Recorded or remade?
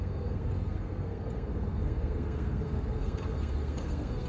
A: remade